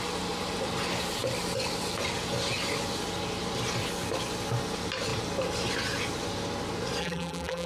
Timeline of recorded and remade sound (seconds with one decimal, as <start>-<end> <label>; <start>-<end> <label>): 0.0-7.0 recorded; 7.0-7.7 remade